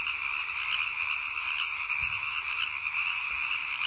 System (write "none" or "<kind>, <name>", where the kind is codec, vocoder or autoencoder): none